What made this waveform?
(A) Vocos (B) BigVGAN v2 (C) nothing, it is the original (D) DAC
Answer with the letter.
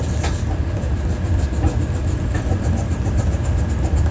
C